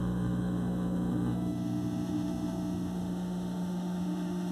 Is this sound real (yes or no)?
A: no